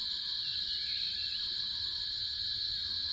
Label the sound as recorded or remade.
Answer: remade